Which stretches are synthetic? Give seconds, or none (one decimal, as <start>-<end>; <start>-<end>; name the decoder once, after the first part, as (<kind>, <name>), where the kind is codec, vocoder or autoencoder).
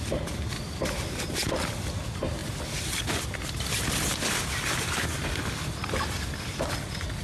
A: none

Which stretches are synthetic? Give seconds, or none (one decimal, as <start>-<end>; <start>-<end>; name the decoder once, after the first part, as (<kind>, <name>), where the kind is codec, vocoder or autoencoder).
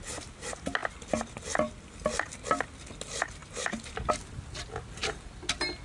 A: none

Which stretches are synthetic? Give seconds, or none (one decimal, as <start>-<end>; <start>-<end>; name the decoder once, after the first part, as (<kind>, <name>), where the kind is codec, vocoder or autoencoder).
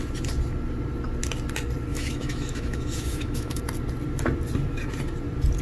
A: 1.9-3.6 (autoencoder, DAC-VAE)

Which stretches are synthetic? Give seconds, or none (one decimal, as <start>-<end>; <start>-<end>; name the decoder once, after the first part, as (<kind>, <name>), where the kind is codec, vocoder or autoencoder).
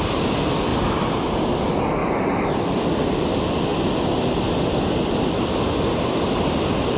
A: 0.7-1.6 (vocoder, BigVGAN v2); 2.0-2.5